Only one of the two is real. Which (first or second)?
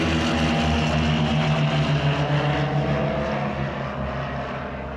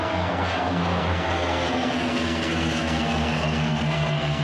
first